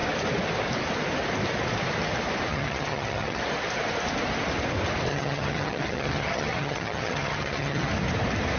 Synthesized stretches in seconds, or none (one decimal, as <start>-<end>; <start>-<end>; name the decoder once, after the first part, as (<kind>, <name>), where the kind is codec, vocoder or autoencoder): 2.5-3.4 (vocoder, HiFi-GAN); 5.1-7.9